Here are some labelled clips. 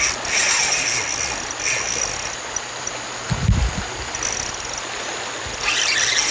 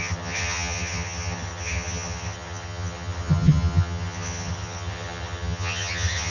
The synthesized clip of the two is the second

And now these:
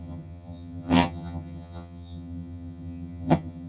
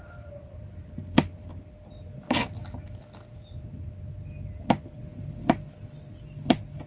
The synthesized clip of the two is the first